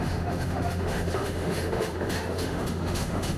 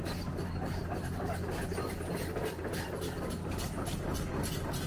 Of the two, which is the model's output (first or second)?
first